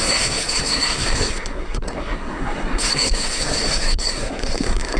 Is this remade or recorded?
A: remade